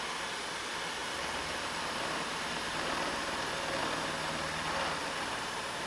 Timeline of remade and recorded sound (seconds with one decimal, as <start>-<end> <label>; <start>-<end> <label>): 0.0-1.0 recorded; 1.0-3.8 remade; 3.8-5.0 recorded; 5.0-5.9 remade